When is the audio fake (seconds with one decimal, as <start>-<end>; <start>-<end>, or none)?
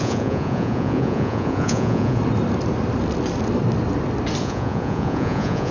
0.0-2.2; 4.4-5.7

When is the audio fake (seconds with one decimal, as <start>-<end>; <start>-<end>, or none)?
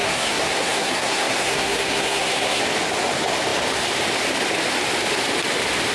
0.0-2.6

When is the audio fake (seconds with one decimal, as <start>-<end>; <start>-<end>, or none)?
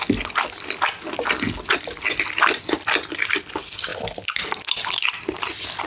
none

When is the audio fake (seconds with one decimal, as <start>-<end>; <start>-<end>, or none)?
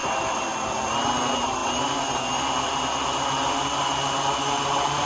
none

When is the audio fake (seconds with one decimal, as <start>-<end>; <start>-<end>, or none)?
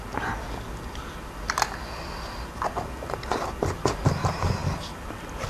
none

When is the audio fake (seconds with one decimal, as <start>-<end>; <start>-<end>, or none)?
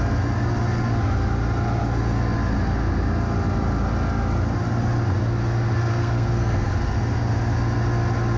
5.9-6.7